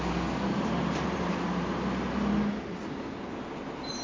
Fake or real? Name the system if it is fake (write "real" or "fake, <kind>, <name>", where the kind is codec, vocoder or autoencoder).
real